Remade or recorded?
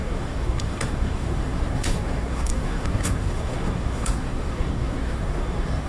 remade